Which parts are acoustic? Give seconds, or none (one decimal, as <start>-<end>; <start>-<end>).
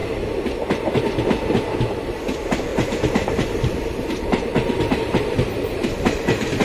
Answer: 0.0-2.7